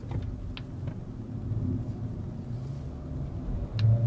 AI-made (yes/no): no